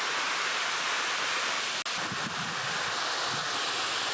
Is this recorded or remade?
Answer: recorded